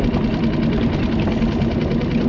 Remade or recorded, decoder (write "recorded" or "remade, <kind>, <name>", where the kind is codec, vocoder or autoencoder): recorded